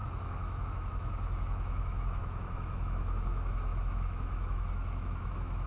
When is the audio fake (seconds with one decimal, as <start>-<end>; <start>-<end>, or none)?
0.0-5.7